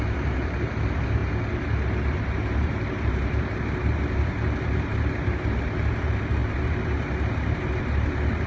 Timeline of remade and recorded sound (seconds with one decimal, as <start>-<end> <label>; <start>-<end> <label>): 0.0-8.5 remade